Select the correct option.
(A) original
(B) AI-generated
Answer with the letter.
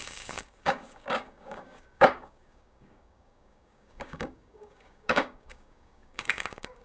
B